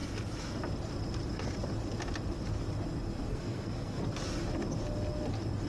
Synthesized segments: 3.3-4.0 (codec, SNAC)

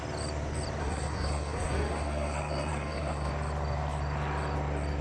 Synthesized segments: 0.8-3.3 (codec, SNAC)

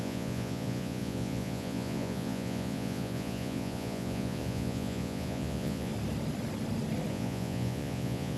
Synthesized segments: 0.0-5.9 (vocoder, Vocos); 7.1-8.4

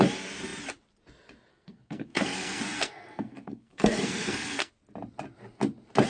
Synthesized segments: 1.5-4.7 (codec, SNAC)

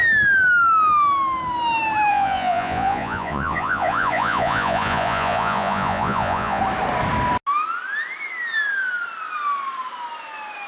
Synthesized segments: 2.1-6.6 (vocoder, Vocos)

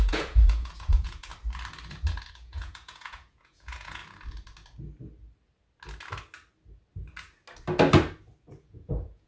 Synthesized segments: 0.0-1.3 (vocoder, Vocos); 2.3-4.0; 8.6-9.3